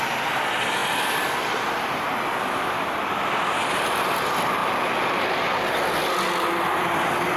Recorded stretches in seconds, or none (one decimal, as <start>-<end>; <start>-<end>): 0.0-7.4